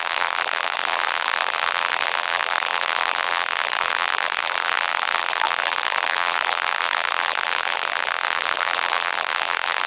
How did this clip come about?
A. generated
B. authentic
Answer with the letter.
A